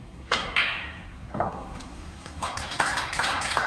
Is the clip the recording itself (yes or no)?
no